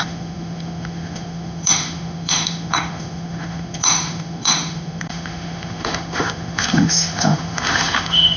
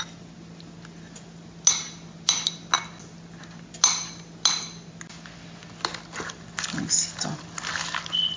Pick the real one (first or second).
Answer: second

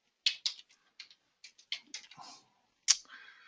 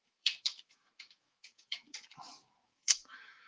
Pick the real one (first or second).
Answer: first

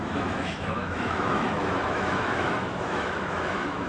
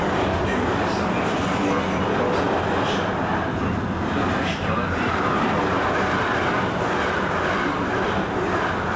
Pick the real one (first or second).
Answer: second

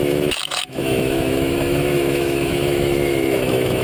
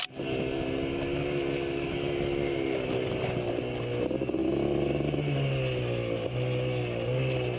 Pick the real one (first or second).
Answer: second